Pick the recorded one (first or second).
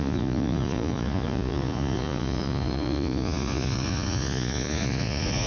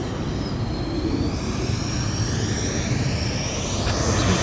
second